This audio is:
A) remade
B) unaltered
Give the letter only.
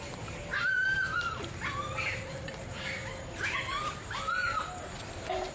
B